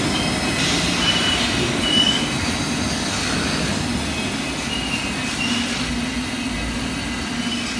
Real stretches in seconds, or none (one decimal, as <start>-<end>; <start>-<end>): 0.0-7.8